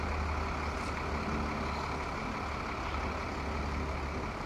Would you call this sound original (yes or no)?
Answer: yes